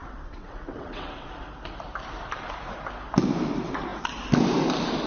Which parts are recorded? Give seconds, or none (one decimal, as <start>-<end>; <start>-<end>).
1.3-5.1